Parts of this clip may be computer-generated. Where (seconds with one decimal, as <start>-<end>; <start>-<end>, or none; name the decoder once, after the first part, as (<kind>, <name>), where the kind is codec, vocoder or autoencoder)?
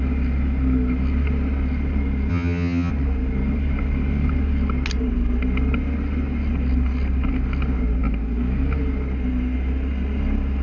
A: 2.3-2.9 (vocoder, HiFi-GAN)